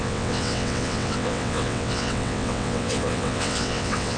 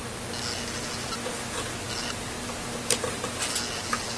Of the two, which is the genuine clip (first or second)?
second